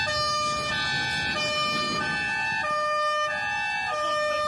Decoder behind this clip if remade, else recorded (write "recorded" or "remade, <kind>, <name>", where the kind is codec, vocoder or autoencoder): recorded